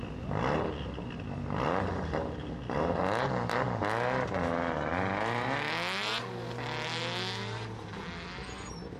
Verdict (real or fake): real